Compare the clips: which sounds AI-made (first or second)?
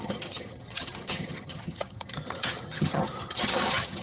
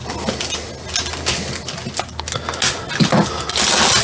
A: first